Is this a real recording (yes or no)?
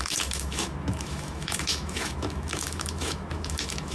no